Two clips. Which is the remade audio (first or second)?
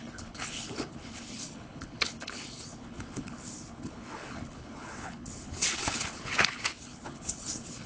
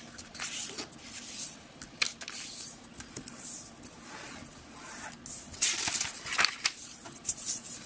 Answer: first